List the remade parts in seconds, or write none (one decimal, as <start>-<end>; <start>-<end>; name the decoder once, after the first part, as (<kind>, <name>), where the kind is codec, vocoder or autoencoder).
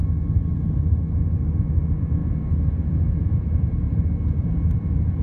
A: 2.2-4.0 (vocoder, BigVGAN v2); 4.4-5.2